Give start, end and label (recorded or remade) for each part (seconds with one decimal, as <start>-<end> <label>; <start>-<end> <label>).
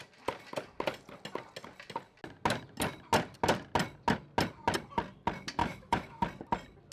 0.0-5.6 recorded; 5.6-6.2 remade; 6.2-6.9 recorded